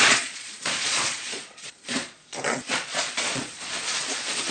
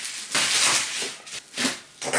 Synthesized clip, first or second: first